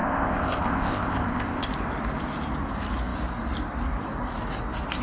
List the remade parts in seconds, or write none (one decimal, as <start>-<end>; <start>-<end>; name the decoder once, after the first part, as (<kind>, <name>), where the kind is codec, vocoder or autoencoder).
0.0-1.7 (codec, ZipCodec)